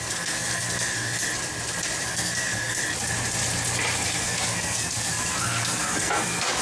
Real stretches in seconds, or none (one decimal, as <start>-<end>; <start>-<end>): 1.2-2.0; 2.8-4.2